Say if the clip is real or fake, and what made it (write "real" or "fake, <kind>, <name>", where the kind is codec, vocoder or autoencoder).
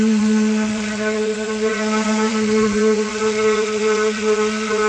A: fake, vocoder, Vocos